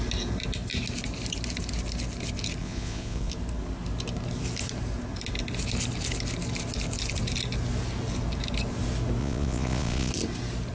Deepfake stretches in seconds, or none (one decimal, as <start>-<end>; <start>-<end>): 2.6-3.3; 9.2-10.1